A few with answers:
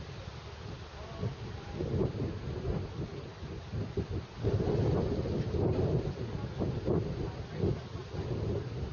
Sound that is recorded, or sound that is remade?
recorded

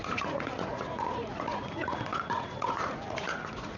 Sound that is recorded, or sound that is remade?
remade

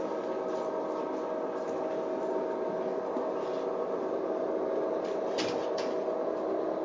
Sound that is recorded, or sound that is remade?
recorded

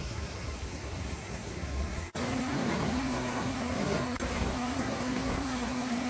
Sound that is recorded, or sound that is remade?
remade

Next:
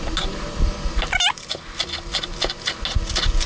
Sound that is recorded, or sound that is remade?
recorded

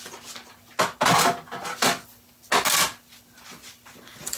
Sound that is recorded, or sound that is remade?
recorded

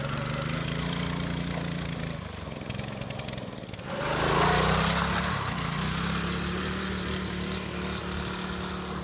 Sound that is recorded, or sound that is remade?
recorded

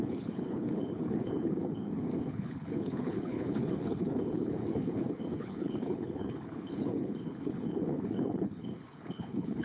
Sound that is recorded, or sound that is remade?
remade